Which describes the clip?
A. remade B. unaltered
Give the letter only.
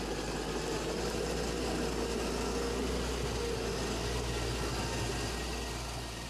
B